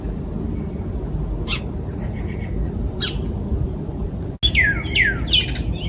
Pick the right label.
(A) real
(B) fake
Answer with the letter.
A